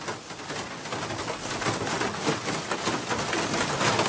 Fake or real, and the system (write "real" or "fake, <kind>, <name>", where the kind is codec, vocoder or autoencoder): real